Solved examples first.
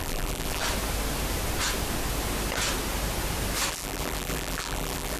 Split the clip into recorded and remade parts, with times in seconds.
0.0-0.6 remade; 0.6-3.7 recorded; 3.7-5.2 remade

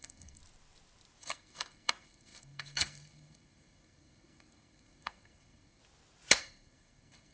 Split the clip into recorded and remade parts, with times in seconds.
0.0-0.4 remade; 0.4-1.2 recorded; 1.2-5.8 remade; 5.8-6.4 recorded; 6.4-7.3 remade